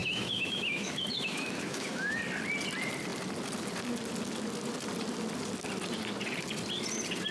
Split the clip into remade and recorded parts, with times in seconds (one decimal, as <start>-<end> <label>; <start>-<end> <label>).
0.0-2.2 remade; 2.2-7.3 recorded